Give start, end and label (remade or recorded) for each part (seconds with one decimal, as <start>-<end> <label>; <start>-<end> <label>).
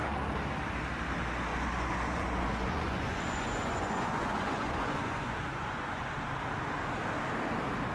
0.0-1.5 recorded; 1.5-6.2 remade; 6.2-7.9 recorded